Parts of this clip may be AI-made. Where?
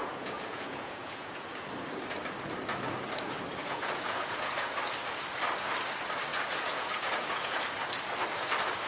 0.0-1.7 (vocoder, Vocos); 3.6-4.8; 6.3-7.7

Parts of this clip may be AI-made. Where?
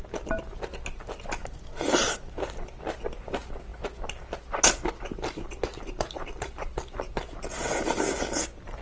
none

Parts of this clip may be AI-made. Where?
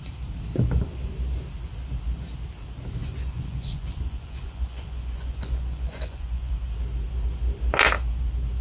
3.0-6.5 (vocoder, Vocos)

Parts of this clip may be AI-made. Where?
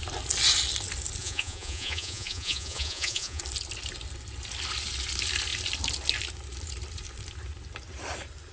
1.2-3.4 (vocoder, Vocos)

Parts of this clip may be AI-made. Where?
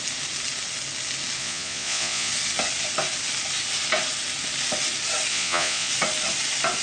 1.4-2.3 (vocoder, Vocos); 5.3-5.9